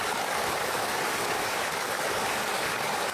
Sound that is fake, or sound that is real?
fake